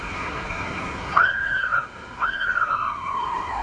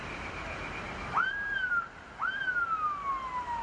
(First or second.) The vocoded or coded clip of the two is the first